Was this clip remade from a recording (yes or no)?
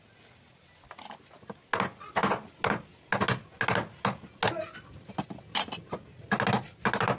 no